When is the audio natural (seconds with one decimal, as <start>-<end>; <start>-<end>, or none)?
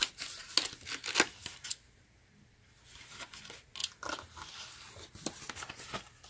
0.0-6.3